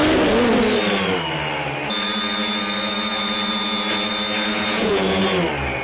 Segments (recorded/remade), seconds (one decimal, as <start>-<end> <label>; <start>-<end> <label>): 0.0-4.5 recorded; 4.5-5.2 remade; 5.2-5.8 recorded